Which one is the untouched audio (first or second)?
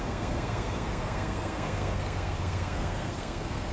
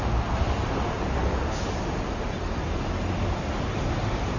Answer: second